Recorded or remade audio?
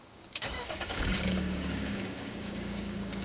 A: remade